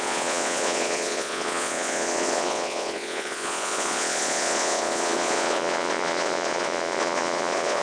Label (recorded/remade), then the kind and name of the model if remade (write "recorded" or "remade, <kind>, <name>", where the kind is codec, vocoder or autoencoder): remade, vocoder, Vocos